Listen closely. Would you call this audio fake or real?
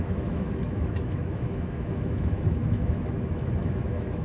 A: fake